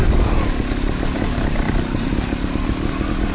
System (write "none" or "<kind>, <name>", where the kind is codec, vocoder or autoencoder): none